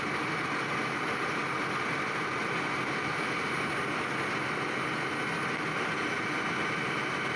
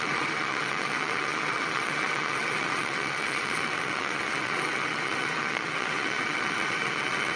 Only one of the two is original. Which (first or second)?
first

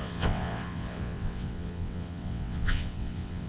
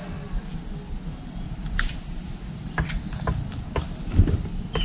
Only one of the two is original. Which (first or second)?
second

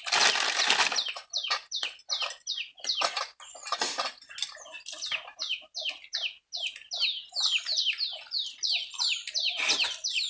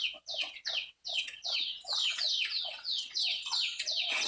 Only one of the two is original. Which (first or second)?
first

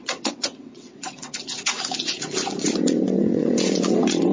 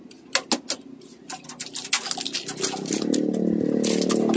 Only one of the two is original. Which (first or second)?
second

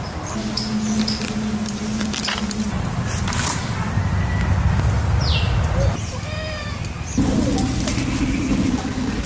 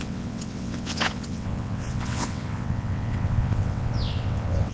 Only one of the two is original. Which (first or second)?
first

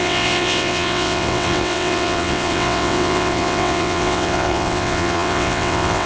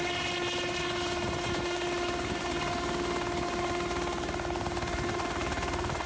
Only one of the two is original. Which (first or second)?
second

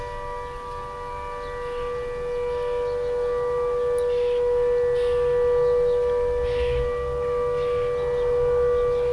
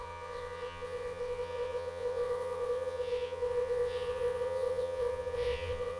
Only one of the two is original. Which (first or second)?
first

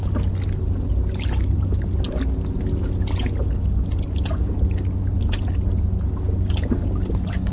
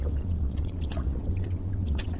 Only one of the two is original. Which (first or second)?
first